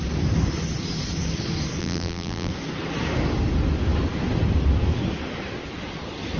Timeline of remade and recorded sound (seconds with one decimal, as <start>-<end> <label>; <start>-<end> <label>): 0.0-1.8 recorded; 1.8-2.5 remade; 2.5-6.4 recorded